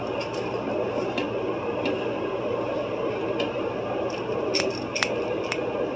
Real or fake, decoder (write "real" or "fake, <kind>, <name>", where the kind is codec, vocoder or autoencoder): real